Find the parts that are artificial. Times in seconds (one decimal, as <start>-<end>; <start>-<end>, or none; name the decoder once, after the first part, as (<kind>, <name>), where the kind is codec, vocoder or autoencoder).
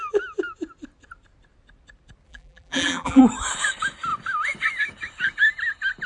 2.3-3.2 (vocoder, BigVGAN v2)